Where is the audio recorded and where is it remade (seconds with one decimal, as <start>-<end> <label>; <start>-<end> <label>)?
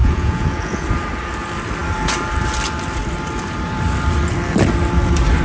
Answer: 0.0-0.9 remade; 0.9-5.4 recorded